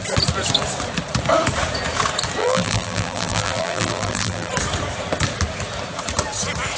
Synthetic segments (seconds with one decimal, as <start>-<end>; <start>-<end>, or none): 2.4-4.5

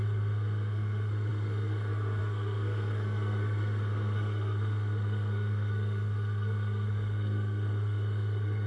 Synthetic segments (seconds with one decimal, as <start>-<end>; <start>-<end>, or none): 0.0-8.7